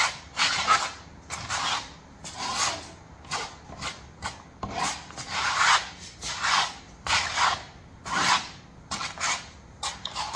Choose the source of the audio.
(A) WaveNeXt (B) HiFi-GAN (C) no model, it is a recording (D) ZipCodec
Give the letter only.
C